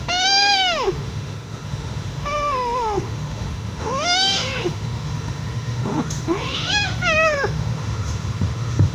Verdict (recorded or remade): remade